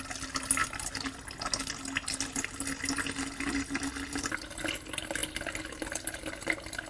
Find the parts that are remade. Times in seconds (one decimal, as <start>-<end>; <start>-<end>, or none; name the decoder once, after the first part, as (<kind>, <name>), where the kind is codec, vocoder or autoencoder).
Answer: none